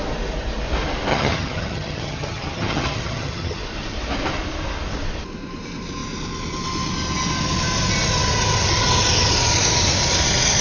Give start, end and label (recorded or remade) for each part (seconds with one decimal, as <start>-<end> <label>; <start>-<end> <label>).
0.0-1.1 recorded; 1.1-3.6 remade; 3.6-10.6 recorded